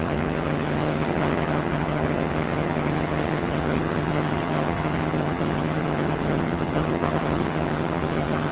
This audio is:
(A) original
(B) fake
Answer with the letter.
B